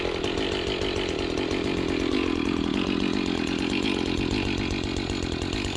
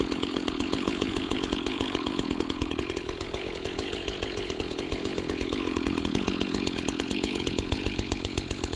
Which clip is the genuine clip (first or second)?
first